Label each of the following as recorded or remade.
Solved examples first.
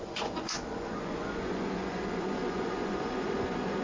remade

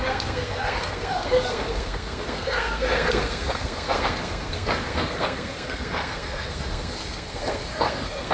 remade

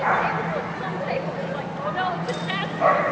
recorded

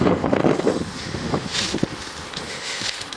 remade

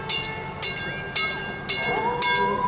recorded